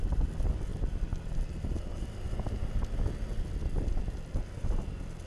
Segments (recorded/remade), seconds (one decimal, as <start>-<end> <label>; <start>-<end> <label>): 0.0-5.3 recorded